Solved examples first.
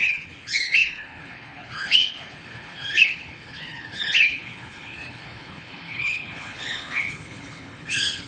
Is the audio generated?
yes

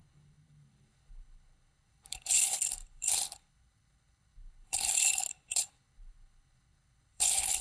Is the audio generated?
yes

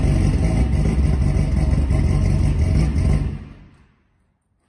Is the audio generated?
no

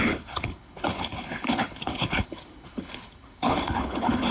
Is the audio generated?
yes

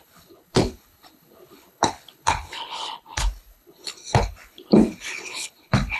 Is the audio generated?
yes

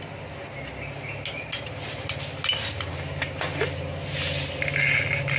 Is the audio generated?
no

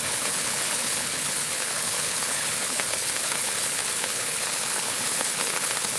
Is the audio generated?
yes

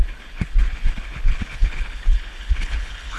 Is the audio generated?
yes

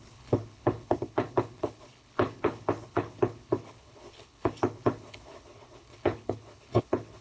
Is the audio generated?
yes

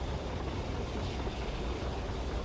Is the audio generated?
no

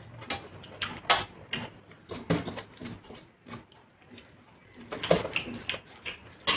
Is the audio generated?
no